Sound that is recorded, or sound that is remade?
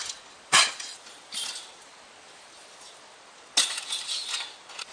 recorded